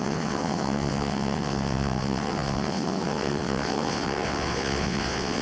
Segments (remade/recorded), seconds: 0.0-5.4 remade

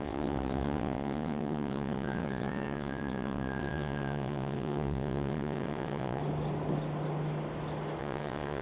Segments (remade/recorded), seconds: 0.0-6.2 remade; 6.2-8.0 recorded; 8.0-8.6 remade

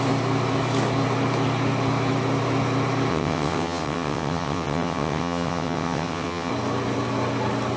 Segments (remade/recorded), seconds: 0.0-3.1 recorded; 3.1-6.5 remade; 6.5-7.8 recorded

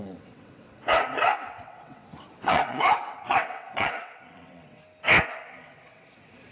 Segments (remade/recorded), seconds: 0.0-4.8 remade; 4.8-5.5 recorded; 5.5-6.5 remade

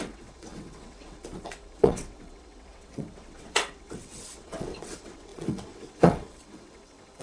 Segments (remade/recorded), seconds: 0.0-7.2 remade

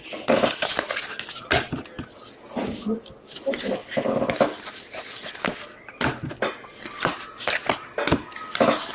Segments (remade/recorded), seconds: 0.0-8.9 recorded